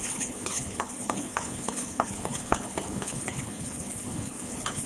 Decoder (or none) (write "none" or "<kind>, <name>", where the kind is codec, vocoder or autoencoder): codec, HILCodec